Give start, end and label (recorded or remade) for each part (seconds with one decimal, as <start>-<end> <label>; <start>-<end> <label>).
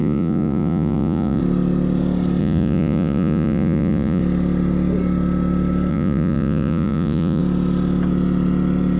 0.0-1.4 remade; 1.4-2.4 recorded; 2.4-4.2 remade; 4.2-5.9 recorded; 5.9-7.4 remade; 7.4-9.0 recorded